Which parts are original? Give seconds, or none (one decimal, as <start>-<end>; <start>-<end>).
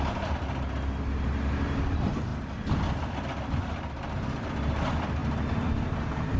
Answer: 0.0-5.2; 5.8-6.4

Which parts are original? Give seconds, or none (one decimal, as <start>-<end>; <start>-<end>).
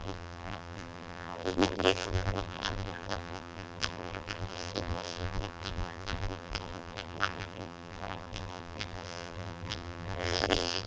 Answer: none